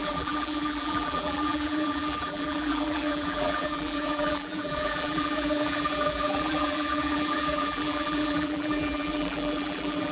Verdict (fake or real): fake